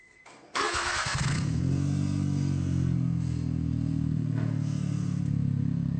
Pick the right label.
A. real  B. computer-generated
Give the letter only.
B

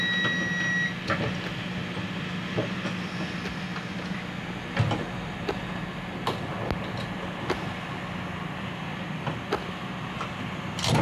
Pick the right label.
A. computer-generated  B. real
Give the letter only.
B